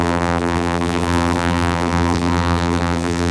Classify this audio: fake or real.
fake